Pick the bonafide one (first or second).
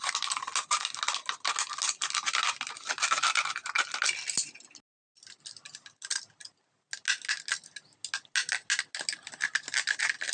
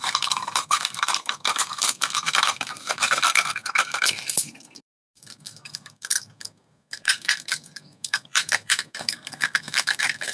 first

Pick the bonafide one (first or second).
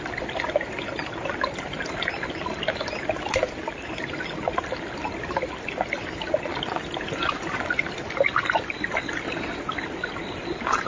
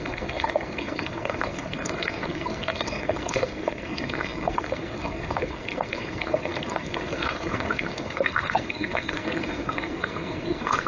first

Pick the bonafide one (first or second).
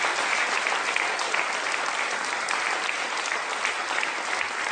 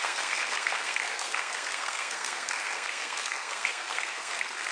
first